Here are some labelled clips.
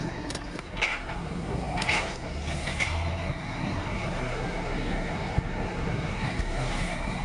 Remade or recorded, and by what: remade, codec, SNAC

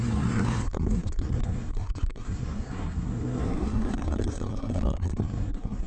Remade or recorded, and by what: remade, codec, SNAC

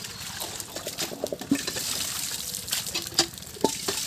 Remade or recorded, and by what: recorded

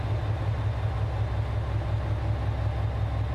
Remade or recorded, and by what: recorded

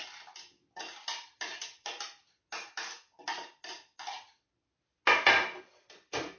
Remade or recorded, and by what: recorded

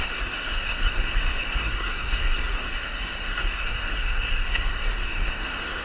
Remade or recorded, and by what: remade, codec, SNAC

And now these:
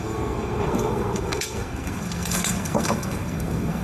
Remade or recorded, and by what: remade, codec, SNAC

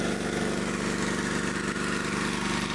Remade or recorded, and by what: recorded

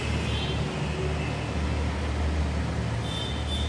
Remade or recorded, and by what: recorded